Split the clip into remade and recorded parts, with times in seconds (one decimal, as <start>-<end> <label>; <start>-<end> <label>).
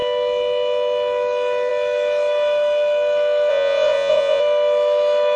0.0-3.5 recorded; 3.5-4.4 remade; 4.4-5.4 recorded